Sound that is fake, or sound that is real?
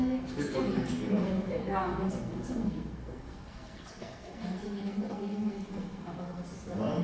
fake